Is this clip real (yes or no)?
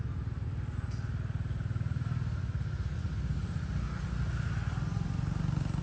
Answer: yes